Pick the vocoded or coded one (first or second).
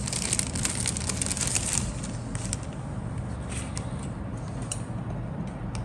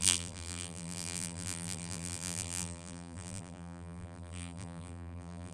second